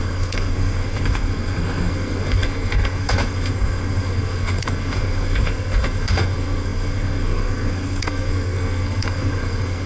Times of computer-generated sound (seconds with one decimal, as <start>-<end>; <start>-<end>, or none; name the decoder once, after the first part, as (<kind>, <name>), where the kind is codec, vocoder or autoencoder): 0.0-9.9 (codec, SNAC)